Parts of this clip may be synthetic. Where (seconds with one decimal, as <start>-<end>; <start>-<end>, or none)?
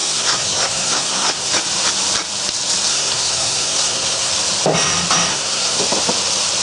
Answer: 0.0-1.5; 2.9-4.3; 5.3-5.8